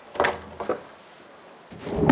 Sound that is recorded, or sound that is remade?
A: recorded